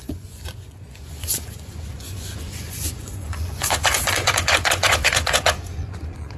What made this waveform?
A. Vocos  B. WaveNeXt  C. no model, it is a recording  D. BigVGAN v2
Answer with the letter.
A